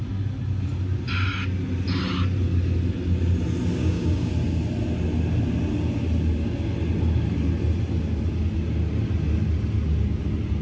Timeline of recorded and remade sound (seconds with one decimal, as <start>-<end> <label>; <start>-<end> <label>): 0.0-3.8 recorded; 3.8-4.3 remade; 4.3-10.6 recorded

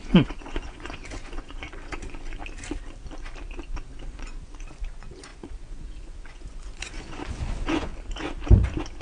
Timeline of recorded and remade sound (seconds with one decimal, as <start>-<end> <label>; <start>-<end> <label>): 0.0-2.4 remade; 2.4-4.1 recorded; 4.1-7.9 remade; 7.9-9.0 recorded

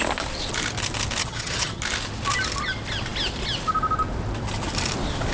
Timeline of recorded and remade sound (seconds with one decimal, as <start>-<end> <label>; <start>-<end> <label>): 0.0-1.2 recorded; 1.2-1.8 remade; 1.8-5.3 recorded

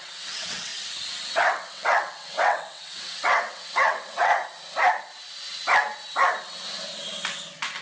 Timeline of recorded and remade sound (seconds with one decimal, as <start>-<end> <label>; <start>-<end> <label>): 0.0-0.7 remade; 0.7-1.3 recorded; 1.3-4.3 remade; 4.3-7.8 recorded

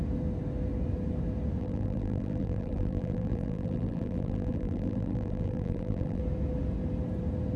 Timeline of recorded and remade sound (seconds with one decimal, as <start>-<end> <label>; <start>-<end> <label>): 0.0-1.6 recorded; 1.6-6.2 remade; 6.2-7.6 recorded